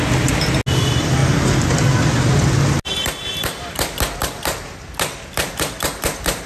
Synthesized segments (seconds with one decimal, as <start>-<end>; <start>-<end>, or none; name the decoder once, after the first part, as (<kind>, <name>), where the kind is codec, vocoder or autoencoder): none